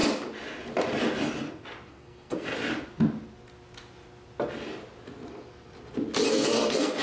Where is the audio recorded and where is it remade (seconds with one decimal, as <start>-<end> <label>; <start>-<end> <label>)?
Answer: 0.0-1.9 recorded; 1.9-2.5 remade; 2.5-6.3 recorded; 6.3-7.0 remade